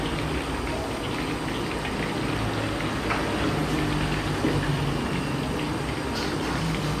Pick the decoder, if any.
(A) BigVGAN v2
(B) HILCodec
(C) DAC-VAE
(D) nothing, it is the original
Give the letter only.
D